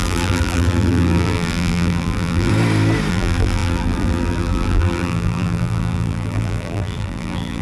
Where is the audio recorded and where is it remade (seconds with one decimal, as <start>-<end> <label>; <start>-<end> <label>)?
0.0-2.5 remade; 2.5-3.1 recorded; 3.1-7.6 remade